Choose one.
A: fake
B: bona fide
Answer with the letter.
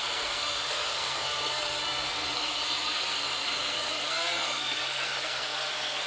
A